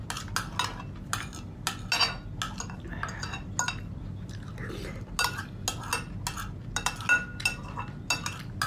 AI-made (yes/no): no